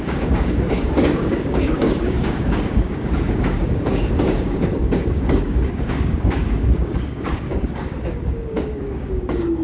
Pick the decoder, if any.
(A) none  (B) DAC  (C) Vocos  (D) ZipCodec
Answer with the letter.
B